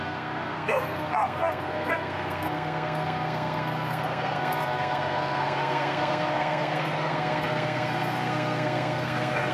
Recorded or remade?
remade